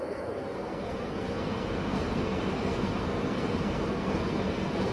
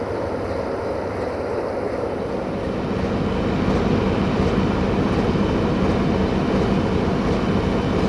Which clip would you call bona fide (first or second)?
second